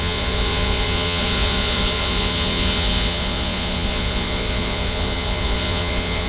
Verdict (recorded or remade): remade